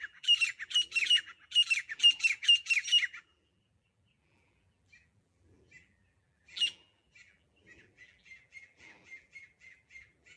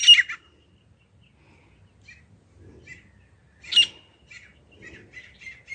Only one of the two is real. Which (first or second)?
second